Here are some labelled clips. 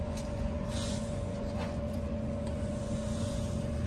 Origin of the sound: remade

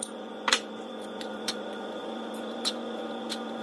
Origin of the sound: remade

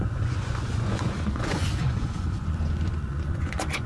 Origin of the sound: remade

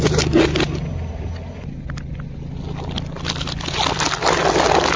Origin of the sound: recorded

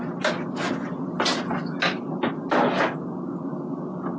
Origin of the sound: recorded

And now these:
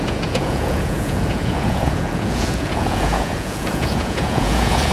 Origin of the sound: remade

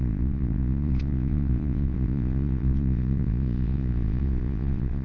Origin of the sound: remade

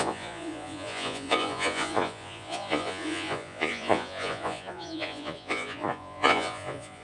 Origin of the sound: remade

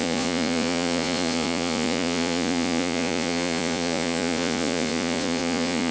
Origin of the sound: remade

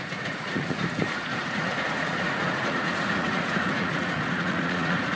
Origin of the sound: remade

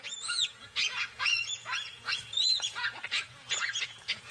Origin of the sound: remade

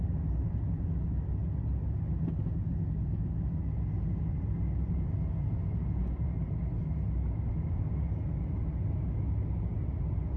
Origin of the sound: recorded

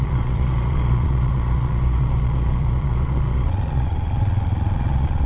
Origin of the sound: remade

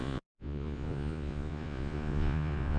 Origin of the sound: remade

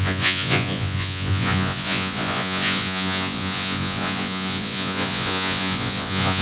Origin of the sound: remade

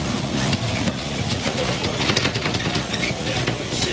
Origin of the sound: remade